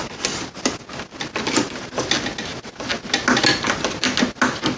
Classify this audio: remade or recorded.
recorded